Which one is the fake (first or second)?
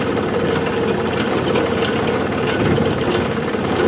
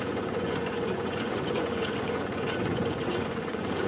second